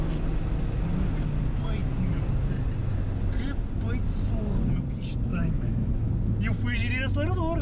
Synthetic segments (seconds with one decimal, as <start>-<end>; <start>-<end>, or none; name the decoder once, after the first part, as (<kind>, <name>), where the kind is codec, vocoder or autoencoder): 5.3-6.1 (autoencoder, DAC-VAE)